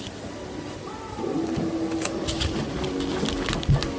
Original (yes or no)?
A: yes